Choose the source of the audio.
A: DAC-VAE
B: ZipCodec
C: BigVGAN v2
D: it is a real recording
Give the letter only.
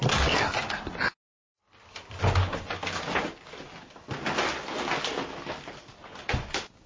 D